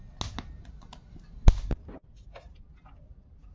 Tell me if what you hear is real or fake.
real